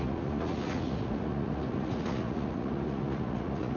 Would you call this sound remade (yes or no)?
yes